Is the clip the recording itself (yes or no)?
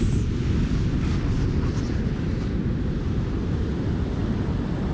yes